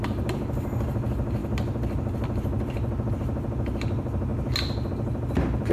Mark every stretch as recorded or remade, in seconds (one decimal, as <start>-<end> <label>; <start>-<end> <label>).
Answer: 0.0-5.7 recorded